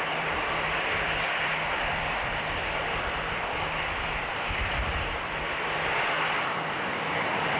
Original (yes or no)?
no